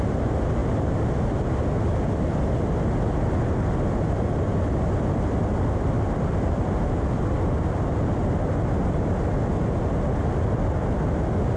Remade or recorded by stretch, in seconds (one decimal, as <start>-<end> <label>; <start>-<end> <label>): 0.0-11.6 recorded